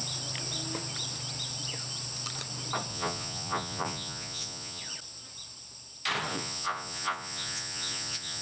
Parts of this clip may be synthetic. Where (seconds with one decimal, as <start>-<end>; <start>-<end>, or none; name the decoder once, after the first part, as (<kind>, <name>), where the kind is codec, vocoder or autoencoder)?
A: 2.9-4.8 (vocoder, Vocos); 6.3-8.4